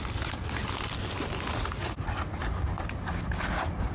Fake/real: real